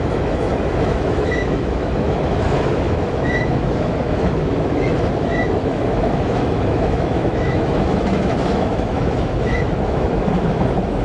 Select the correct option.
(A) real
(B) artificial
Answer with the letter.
B